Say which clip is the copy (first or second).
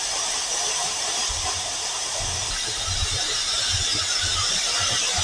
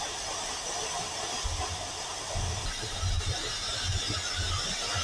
first